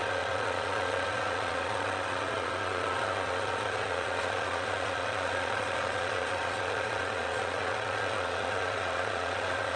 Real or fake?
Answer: fake